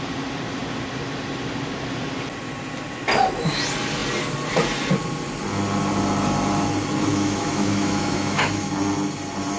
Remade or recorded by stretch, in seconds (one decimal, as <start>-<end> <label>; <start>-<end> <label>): 0.0-7.1 recorded; 7.1-8.7 remade; 8.7-9.6 recorded